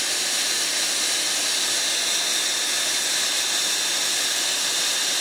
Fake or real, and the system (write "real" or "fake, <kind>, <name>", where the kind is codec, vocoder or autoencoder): real